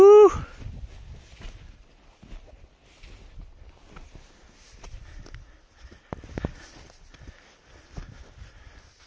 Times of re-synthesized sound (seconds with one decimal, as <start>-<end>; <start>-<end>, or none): none